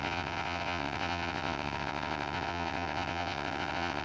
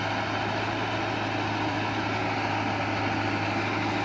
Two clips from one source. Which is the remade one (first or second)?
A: first